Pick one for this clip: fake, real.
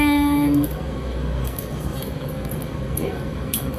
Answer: fake